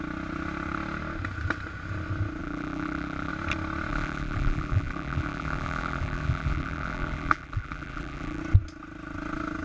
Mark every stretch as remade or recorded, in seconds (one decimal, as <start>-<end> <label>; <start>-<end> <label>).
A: 0.0-2.4 recorded; 2.4-3.3 remade; 3.3-3.9 recorded; 3.9-8.4 remade; 8.4-9.6 recorded